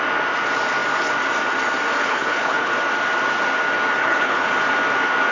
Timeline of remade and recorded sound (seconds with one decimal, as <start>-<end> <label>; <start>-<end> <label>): 0.0-2.0 recorded; 2.0-2.7 remade; 2.7-4.0 recorded; 4.0-4.5 remade; 4.5-5.3 recorded

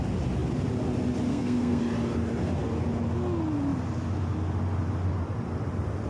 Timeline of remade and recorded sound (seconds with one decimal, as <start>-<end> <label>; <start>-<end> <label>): 0.0-1.3 recorded; 1.3-1.8 remade; 1.8-6.1 recorded